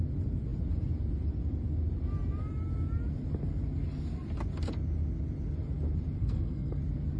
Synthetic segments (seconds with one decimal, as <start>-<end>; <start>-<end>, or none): 6.2-6.8